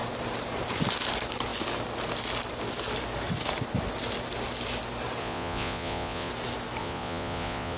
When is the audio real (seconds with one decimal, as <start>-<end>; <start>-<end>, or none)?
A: 0.0-5.2; 6.3-6.8